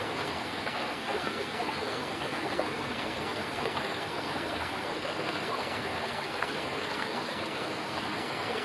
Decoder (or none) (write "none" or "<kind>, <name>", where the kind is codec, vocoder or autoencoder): codec, SNAC